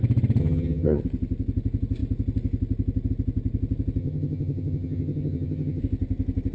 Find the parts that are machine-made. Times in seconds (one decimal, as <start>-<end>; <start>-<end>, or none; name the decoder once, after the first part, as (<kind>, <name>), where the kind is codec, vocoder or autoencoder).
0.4-1.0 (vocoder, HiFi-GAN); 4.0-5.8